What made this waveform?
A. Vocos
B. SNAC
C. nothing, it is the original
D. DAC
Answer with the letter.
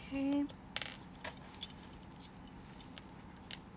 C